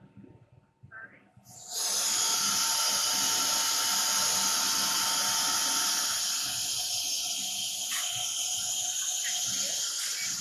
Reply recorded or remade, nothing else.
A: recorded